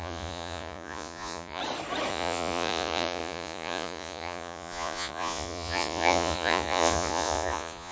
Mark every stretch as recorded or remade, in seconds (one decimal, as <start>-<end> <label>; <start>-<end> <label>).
0.0-1.6 remade; 1.6-2.1 recorded; 2.1-7.9 remade